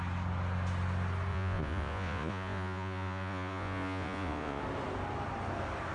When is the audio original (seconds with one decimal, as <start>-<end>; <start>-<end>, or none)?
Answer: 0.0-1.3; 4.6-5.9